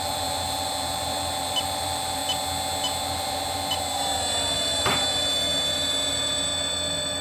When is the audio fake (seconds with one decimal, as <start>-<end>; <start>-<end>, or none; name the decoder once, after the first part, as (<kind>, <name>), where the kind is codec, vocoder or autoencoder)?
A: 0.0-2.2 (vocoder, BigVGAN v2); 3.0-6.5